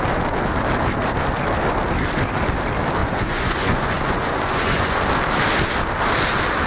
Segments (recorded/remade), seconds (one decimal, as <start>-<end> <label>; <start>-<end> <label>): 0.0-3.0 recorded; 3.0-5.0 remade; 5.0-6.7 recorded